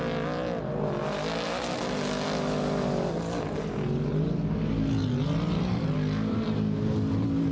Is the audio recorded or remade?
recorded